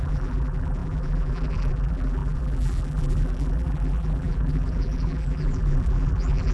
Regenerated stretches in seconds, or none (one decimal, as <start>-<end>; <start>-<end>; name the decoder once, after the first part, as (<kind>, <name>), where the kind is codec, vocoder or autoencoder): 0.0-6.5 (vocoder, BigVGAN v2)